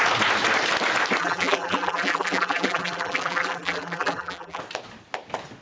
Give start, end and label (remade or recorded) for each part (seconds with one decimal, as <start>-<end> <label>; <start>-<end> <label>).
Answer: 0.0-1.2 recorded; 1.2-4.6 remade; 4.6-5.6 recorded